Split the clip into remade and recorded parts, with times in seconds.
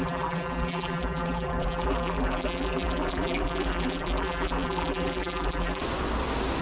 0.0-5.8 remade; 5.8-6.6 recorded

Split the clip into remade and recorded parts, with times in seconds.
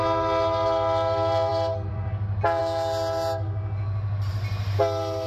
0.0-5.3 recorded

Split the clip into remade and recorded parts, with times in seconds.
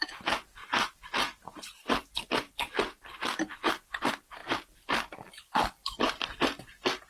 0.0-0.6 recorded; 0.6-1.1 remade; 1.1-1.6 recorded; 1.6-3.2 remade; 3.2-4.4 recorded; 4.4-5.3 remade; 5.3-5.8 recorded; 5.8-6.4 remade; 6.4-7.1 recorded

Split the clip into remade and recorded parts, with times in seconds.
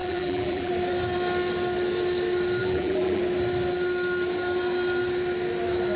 0.0-0.7 remade; 0.7-2.6 recorded; 2.6-3.2 remade; 3.2-6.0 recorded